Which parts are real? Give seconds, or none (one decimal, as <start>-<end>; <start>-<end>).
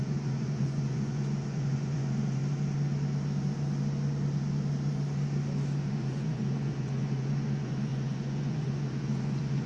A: 2.4-5.9